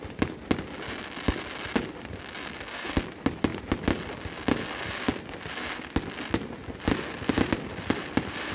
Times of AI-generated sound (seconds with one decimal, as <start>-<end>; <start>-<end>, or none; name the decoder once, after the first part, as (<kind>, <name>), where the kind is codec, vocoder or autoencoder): none